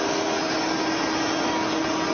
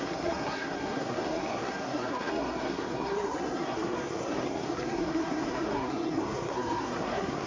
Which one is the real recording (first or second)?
first